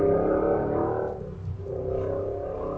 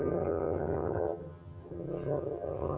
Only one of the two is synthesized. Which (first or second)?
second